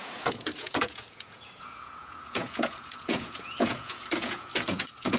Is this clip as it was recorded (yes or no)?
no